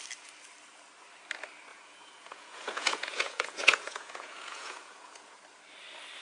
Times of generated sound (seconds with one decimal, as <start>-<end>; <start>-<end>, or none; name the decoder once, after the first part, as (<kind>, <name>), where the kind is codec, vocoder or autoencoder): 1.7-5.4 (vocoder, Vocos)